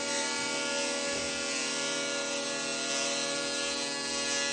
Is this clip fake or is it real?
real